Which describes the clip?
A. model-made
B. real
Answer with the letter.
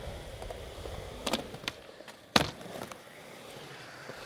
A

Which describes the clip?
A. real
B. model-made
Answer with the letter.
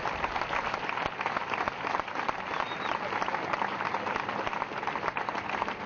A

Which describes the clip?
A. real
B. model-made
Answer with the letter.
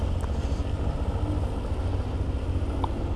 A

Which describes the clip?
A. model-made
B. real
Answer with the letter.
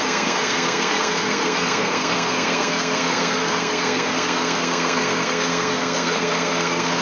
A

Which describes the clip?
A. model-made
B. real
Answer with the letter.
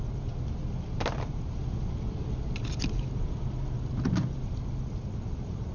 B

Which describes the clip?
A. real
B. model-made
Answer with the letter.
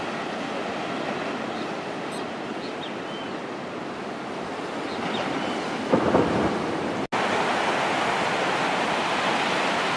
A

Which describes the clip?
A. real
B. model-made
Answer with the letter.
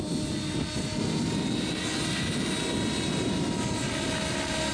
A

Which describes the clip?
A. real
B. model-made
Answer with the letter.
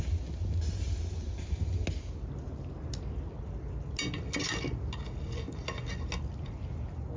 A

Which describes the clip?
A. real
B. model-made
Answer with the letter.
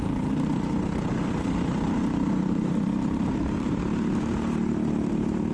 B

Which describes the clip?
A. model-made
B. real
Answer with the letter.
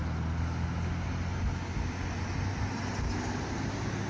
B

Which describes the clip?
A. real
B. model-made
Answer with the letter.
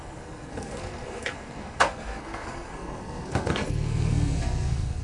B